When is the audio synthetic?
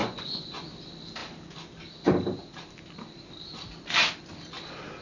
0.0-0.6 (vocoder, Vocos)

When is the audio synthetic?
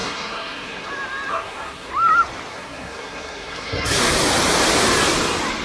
0.0-0.9 (codec, SNAC); 1.3-1.9; 2.5-4.1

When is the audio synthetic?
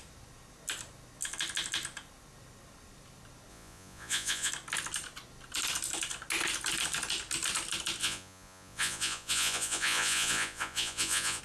3.5-4.5 (vocoder, Vocos); 8.0-11.4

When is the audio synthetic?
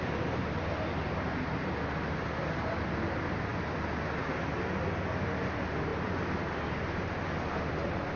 none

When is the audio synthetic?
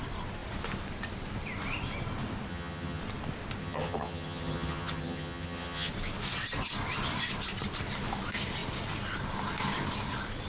2.5-3.0 (vocoder, HiFi-GAN); 3.6-5.9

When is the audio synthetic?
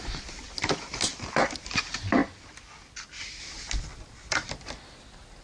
none